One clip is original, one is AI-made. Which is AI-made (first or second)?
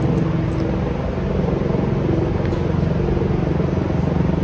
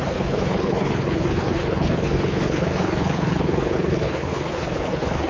second